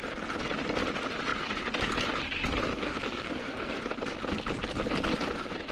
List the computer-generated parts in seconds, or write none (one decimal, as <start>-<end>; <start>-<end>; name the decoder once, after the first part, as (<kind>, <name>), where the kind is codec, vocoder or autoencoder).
2.7-3.8 (codec, SNAC)

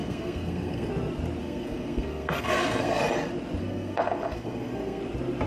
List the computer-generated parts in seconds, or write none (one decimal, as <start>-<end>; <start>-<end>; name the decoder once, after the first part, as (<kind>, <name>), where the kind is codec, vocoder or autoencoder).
0.0-0.9 (codec, SNAC); 1.4-3.0; 3.6-5.0

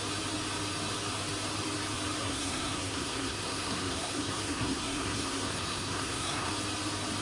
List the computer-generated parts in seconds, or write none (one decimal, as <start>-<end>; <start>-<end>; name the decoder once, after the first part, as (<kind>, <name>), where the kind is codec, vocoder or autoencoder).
2.2-6.5 (codec, SNAC)

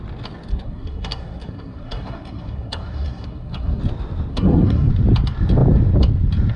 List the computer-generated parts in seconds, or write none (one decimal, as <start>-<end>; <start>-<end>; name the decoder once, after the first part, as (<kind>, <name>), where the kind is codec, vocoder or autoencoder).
0.5-3.8 (codec, SNAC); 4.3-4.9

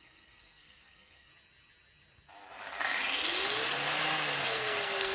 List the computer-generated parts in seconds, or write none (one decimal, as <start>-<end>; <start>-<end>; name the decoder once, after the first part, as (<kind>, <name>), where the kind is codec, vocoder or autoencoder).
0.0-1.3 (codec, SNAC); 4.4-5.1